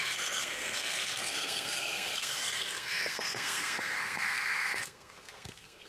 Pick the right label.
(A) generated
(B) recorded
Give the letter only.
A